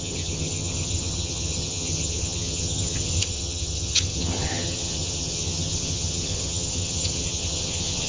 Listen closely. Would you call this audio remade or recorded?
remade